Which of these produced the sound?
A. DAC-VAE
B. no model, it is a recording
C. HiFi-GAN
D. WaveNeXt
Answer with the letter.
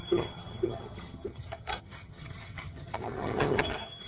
C